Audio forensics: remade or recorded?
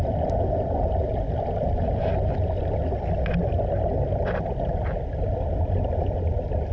recorded